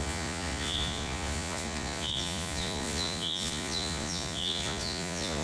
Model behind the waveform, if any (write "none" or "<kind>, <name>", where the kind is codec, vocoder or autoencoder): vocoder, Vocos